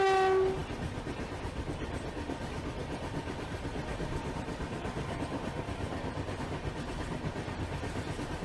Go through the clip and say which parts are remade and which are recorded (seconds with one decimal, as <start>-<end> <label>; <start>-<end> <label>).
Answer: 0.0-8.4 recorded